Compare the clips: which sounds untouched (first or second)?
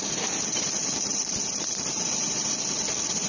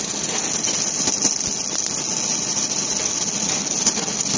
second